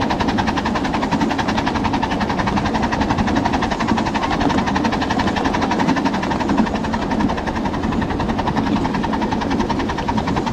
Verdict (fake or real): real